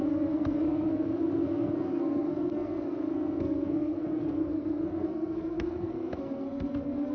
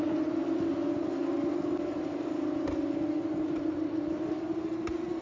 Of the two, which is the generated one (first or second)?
first